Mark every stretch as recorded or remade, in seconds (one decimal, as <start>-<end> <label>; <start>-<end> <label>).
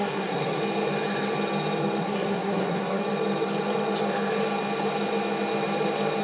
0.0-0.6 remade; 0.6-2.0 recorded; 2.0-3.0 remade; 3.0-6.2 recorded